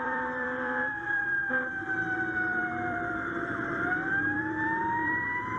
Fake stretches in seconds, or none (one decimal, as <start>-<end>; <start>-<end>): 0.0-5.6